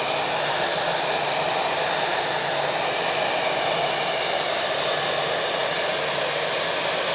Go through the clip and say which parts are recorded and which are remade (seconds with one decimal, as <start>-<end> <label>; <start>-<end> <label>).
0.0-0.7 recorded; 0.7-1.7 remade; 1.7-5.6 recorded; 5.6-6.5 remade; 6.5-7.1 recorded